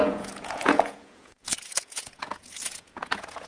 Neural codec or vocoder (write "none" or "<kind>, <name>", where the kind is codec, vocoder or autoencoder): vocoder, Vocos